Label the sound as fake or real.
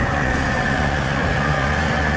fake